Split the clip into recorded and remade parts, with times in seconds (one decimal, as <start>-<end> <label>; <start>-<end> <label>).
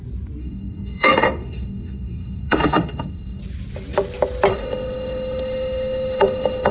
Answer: 0.0-0.4 recorded; 0.4-3.4 remade; 3.4-4.5 recorded; 4.5-6.7 remade